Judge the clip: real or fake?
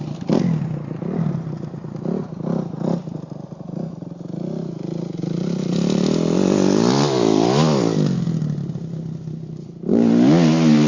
real